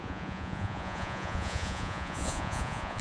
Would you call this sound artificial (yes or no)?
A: yes